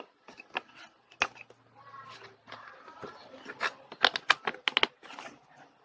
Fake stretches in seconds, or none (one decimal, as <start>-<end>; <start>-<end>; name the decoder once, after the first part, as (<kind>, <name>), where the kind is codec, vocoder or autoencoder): none